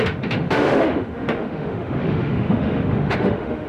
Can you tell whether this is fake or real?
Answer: fake